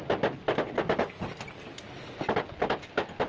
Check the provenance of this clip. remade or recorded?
recorded